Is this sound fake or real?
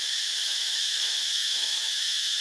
fake